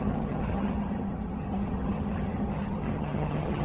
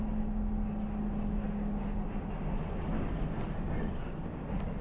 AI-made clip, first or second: first